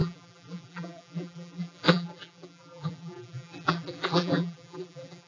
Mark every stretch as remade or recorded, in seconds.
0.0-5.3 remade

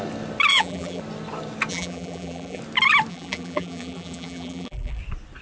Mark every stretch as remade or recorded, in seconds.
0.0-0.5 recorded; 0.5-1.0 remade; 1.0-1.7 recorded; 1.7-2.6 remade; 2.6-3.1 recorded; 3.1-5.0 remade; 5.0-5.4 recorded

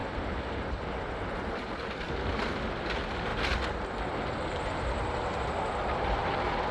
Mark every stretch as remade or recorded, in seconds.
0.0-2.4 remade; 2.4-3.3 recorded; 3.3-5.5 remade; 5.5-6.7 recorded